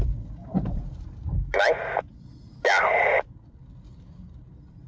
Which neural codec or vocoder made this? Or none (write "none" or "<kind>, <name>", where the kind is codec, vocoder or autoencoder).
none